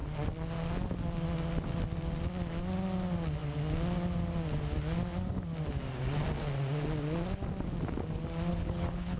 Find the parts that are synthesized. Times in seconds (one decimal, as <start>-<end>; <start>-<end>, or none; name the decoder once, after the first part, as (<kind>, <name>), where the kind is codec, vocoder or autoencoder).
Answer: 8.5-9.2 (codec, HILCodec)